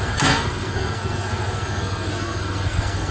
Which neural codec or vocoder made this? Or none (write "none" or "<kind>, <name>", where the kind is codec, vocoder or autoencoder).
codec, SNAC